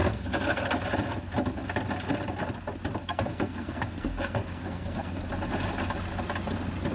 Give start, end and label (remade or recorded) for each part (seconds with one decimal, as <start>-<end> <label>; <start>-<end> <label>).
0.0-0.7 remade; 0.7-3.0 recorded; 3.0-5.2 remade; 5.2-6.9 recorded